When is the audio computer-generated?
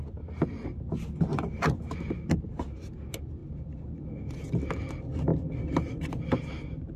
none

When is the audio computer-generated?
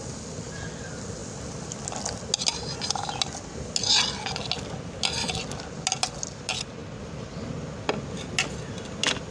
none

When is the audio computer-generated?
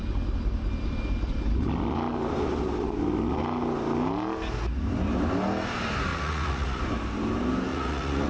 6.1-6.8 (vocoder, Vocos); 7.7-8.3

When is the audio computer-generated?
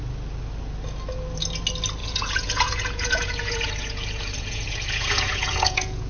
2.0-6.1 (vocoder, Vocos)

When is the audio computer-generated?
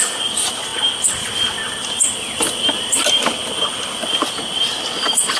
none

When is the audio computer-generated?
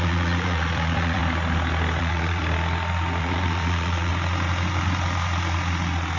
0.0-1.2 (vocoder, Vocos); 2.0-2.4; 3.2-4.1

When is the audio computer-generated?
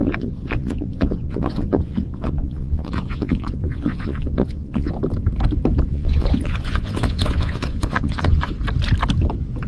0.0-4.9 (vocoder, Vocos); 5.9-8.5